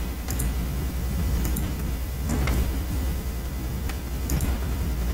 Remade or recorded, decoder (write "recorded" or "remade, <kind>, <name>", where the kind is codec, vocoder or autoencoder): recorded